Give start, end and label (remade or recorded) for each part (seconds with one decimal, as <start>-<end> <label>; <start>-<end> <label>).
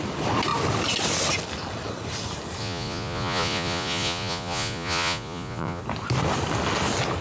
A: 0.0-2.6 recorded; 2.6-5.8 remade; 5.8-7.2 recorded